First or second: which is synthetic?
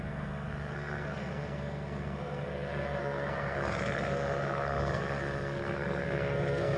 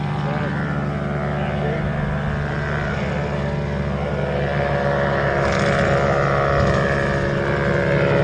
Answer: first